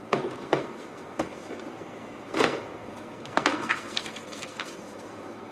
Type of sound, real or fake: fake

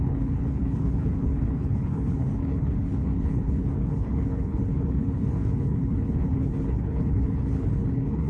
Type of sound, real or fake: fake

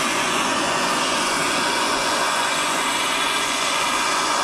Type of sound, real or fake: fake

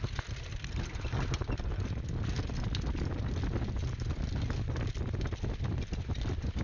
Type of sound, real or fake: real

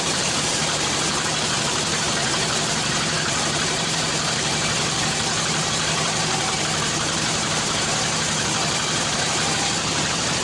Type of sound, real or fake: fake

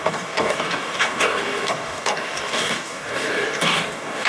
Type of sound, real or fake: fake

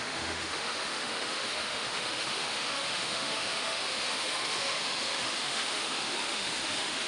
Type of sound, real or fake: fake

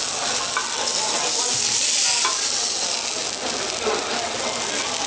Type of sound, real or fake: real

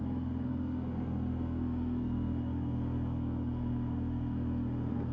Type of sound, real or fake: fake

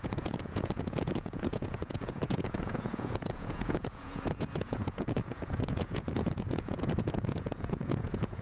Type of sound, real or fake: fake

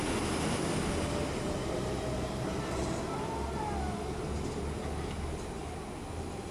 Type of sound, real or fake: real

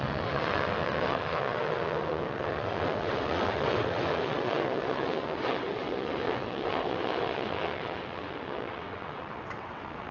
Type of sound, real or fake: fake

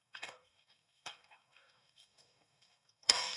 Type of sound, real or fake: fake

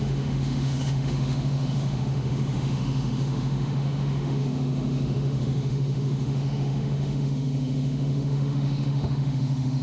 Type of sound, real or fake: fake